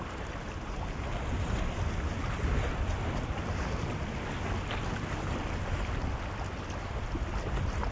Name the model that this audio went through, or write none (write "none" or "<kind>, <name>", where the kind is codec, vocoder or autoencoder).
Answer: none